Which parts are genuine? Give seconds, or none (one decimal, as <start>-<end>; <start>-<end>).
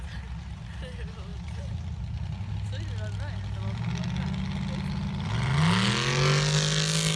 0.0-7.2